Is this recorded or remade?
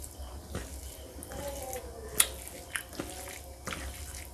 recorded